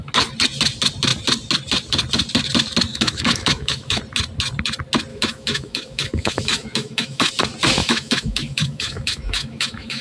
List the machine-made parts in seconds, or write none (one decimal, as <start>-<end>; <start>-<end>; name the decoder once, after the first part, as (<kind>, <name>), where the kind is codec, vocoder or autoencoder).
2.9-4.0 (autoencoder, DAC-VAE); 5.1-7.3; 7.8-10.0